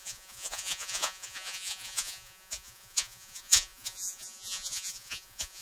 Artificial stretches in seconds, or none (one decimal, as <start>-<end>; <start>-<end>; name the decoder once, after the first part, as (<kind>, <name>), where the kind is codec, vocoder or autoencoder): 0.0-5.6 (vocoder, Vocos)